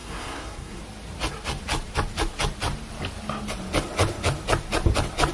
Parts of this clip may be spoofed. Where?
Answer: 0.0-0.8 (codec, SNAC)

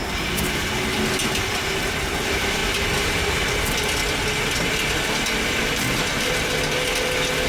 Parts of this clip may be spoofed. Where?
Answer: none

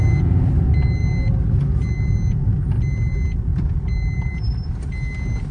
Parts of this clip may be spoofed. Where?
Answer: none

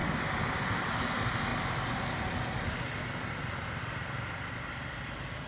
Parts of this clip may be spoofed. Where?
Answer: 0.0-1.1 (vocoder, BigVGAN v2)

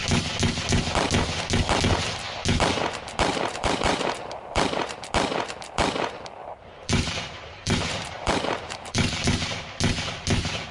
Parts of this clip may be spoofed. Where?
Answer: 3.3-5.1 (vocoder, BigVGAN v2); 6.4-9.8